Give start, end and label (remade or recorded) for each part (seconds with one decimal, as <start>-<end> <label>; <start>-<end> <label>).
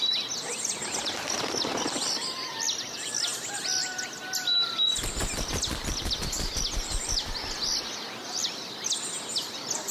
0.0-9.9 recorded